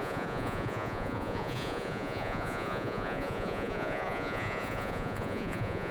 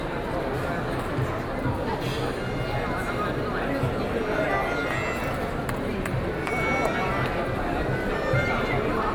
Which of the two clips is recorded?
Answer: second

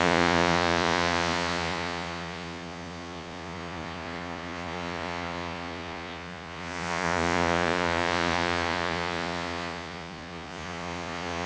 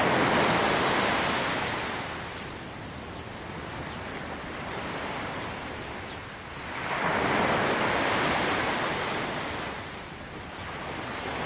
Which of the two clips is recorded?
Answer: second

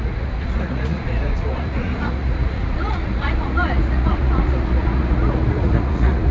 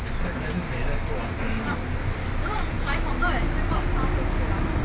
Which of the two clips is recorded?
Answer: second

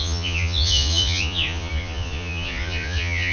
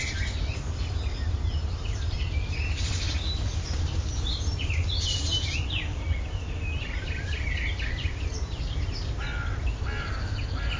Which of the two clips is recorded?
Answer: second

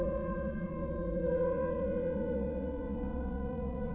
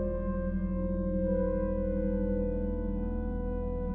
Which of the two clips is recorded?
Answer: second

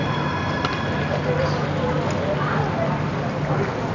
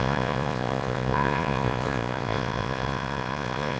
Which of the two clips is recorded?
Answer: first